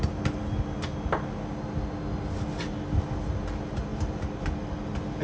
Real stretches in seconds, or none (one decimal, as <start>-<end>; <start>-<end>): 0.0-3.9; 4.5-5.2